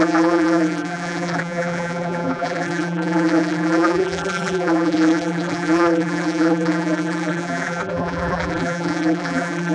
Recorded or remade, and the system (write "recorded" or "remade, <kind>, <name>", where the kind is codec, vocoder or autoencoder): remade, vocoder, BigVGAN v2